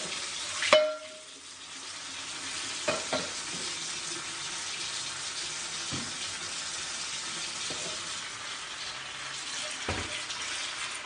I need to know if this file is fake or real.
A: real